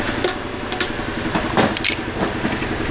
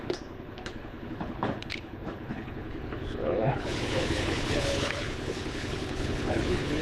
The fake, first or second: second